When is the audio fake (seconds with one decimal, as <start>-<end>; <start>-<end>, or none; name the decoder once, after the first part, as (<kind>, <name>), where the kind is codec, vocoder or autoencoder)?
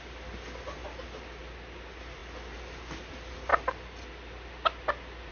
none